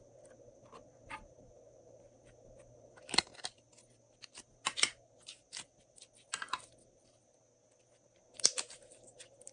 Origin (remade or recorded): recorded